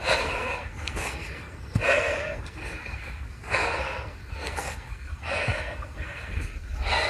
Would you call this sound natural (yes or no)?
no